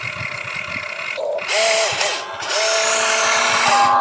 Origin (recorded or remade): recorded